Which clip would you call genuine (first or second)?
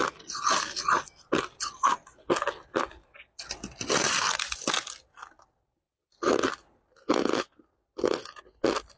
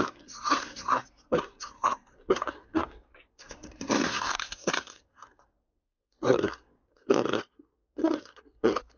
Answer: first